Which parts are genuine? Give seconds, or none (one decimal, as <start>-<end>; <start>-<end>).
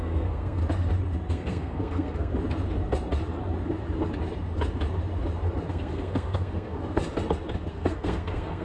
0.6-1.3; 2.3-5.7; 7.0-7.7